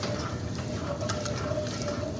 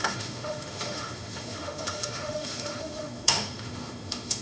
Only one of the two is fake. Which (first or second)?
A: second